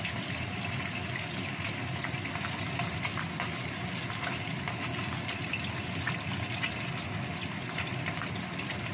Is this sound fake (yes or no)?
no